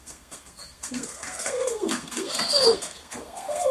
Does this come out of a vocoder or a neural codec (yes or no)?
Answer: yes